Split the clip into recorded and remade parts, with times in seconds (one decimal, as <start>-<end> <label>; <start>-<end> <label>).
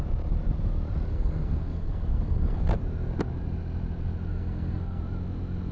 0.0-1.1 recorded; 1.1-2.8 remade; 2.8-4.3 recorded; 4.3-5.0 remade; 5.0-5.7 recorded